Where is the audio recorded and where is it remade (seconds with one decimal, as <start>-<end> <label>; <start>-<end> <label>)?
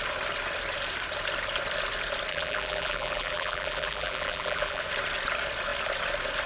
0.0-2.3 recorded; 2.3-4.8 remade; 4.8-6.5 recorded